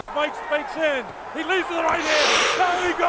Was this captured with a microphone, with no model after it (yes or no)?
yes